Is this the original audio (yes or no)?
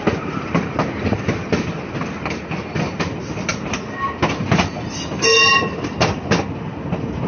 yes